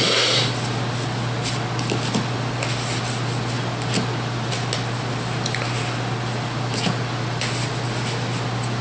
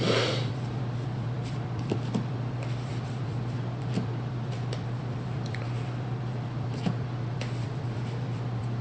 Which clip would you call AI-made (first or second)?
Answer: second